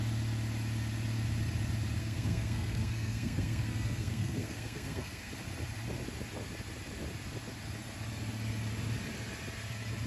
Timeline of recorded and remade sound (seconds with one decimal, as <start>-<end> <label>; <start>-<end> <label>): 0.0-2.0 recorded; 2.0-5.3 remade; 5.3-10.1 recorded